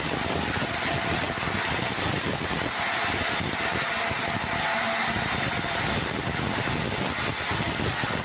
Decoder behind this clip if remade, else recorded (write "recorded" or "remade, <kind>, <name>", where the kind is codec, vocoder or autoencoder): recorded